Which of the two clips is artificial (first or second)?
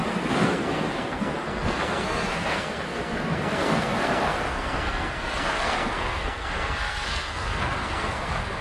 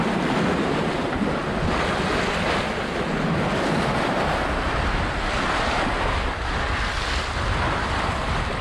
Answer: first